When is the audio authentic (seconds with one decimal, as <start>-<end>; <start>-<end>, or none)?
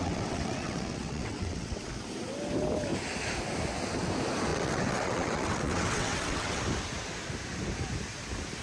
1.8-4.5; 6.6-8.6